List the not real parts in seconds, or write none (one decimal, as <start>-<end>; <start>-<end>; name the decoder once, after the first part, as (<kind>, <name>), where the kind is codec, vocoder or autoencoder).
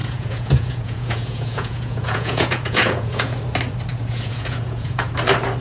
0.0-3.4 (vocoder, Vocos); 3.9-5.1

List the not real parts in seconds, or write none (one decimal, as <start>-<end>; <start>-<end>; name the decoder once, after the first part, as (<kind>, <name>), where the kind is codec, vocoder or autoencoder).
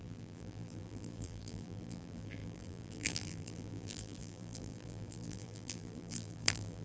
0.0-6.8 (vocoder, BigVGAN v2)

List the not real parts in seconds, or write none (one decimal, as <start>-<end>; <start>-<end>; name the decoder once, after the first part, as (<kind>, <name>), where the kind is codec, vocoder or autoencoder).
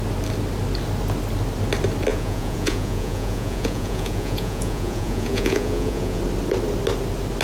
2.1-6.2 (vocoder, Vocos)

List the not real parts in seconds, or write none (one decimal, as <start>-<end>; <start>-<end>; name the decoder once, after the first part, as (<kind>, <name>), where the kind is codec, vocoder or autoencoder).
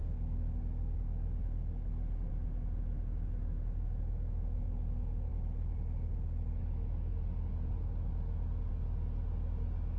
0.0-2.3 (codec, DAC)